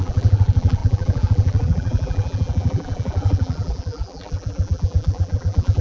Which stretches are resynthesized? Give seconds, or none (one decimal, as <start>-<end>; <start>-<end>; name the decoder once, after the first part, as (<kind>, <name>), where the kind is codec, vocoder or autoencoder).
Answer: 0.0-5.8 (vocoder, BigVGAN v2)